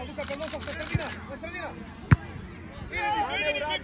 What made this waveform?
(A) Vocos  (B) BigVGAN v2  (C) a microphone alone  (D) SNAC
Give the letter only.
C